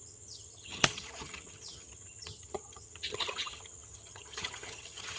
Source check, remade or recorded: remade